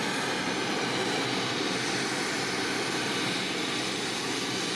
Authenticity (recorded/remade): recorded